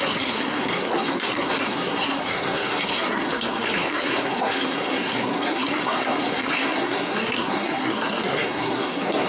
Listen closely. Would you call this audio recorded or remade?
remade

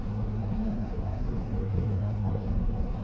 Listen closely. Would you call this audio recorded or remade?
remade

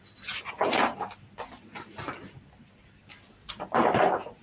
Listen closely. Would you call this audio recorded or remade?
remade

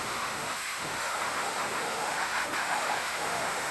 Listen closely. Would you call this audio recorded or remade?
remade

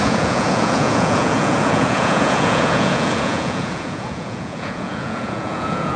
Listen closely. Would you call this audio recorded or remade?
remade